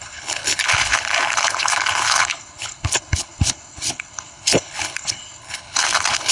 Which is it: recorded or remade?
remade